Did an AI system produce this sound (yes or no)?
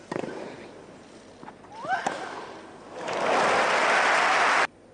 no